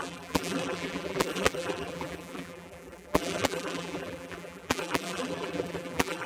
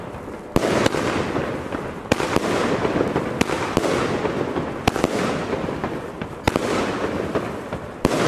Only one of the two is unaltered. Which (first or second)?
second